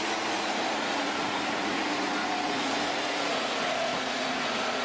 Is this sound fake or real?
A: fake